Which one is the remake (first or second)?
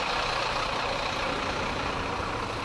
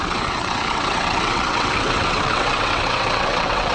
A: second